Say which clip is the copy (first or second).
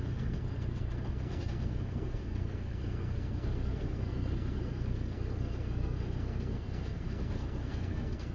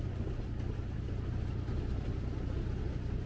first